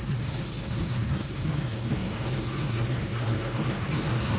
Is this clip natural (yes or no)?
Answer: no